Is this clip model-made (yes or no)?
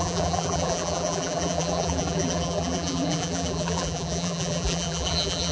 yes